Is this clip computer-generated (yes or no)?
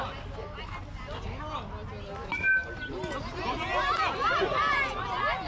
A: no